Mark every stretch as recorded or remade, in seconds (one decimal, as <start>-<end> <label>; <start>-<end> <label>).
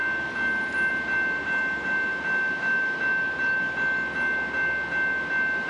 0.0-5.7 recorded